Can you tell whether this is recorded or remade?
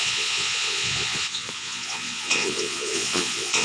remade